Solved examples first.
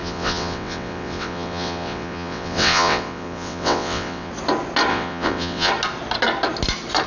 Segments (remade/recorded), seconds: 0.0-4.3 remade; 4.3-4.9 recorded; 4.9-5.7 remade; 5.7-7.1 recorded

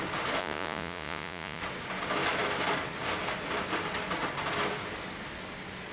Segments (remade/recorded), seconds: 0.0-0.4 recorded; 0.4-1.6 remade; 1.6-5.9 recorded

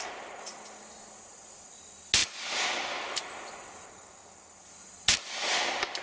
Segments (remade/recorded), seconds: 0.0-6.0 recorded

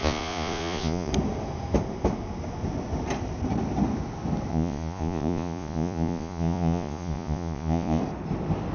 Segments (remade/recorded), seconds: 0.0-1.1 remade; 1.1-4.5 recorded; 4.5-8.0 remade; 8.0-8.7 recorded